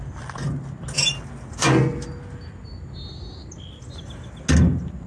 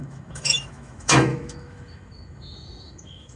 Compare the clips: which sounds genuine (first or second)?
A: first